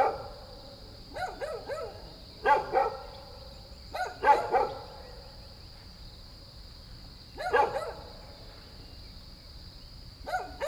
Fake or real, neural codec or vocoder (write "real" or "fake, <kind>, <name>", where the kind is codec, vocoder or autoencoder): real